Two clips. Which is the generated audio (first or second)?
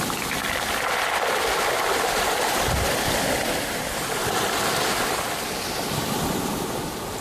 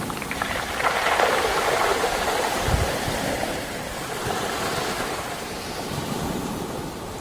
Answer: second